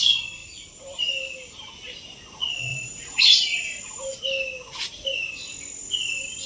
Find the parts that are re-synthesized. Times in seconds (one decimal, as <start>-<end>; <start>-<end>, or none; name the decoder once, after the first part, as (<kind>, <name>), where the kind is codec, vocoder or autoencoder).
0.4-1.7 (vocoder, BigVGAN v2); 2.7-4.2